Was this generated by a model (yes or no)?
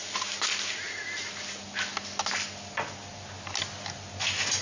no